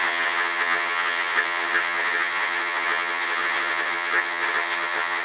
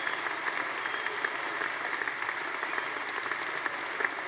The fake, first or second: first